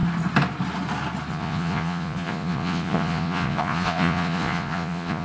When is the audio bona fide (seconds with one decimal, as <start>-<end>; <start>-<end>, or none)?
0.0-1.3